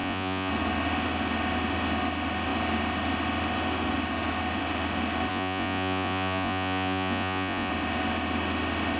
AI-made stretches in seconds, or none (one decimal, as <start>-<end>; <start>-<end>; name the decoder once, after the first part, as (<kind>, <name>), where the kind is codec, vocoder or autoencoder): 0.0-0.5 (vocoder, Vocos); 5.3-7.7